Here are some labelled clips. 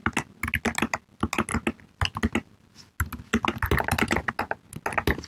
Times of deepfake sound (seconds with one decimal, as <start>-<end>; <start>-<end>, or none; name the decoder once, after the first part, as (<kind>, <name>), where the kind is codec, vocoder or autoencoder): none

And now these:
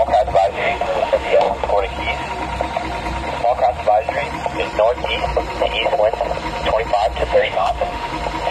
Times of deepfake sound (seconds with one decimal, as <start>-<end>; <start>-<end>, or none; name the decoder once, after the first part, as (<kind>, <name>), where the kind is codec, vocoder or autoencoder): 0.5-1.7 (autoencoder, DAC-VAE); 7.2-8.1

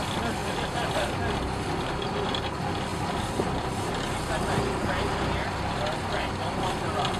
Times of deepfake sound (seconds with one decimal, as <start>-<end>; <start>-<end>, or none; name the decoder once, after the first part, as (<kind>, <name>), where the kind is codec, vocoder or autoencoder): 0.4-1.2 (vocoder, BigVGAN v2); 2.9-3.9

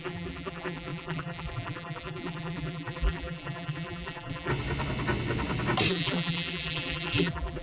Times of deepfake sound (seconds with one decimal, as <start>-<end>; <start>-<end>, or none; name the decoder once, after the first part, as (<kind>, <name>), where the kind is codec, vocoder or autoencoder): 0.0-4.5 (vocoder, BigVGAN v2); 5.9-7.6

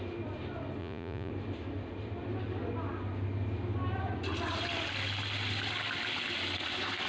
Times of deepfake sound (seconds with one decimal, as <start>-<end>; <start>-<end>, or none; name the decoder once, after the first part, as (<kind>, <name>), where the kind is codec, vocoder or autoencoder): 0.8-1.3 (vocoder, Vocos)

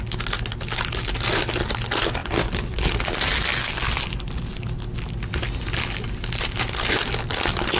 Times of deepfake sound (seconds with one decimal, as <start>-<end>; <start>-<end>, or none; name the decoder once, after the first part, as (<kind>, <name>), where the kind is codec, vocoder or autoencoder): none

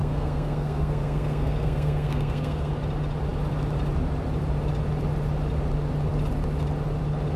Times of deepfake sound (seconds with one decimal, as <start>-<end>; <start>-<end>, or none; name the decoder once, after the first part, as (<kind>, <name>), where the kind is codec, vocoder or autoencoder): 0.0-2.7 (codec, SNAC)